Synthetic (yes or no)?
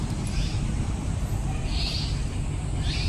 no